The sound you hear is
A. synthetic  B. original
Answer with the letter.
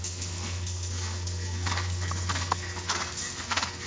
A